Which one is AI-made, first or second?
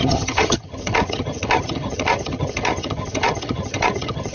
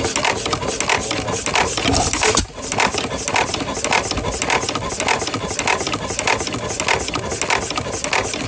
first